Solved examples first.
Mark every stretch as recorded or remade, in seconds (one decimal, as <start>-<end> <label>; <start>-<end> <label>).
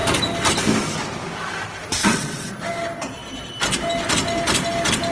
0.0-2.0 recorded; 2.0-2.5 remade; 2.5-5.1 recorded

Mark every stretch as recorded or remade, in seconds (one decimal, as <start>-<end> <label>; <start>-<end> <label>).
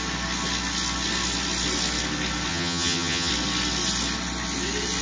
0.0-2.5 recorded; 2.5-3.3 remade; 3.3-5.0 recorded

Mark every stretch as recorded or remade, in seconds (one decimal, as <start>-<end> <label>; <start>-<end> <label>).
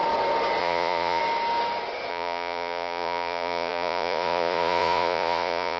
0.0-0.6 recorded; 0.6-1.2 remade; 1.2-2.1 recorded; 2.1-5.8 remade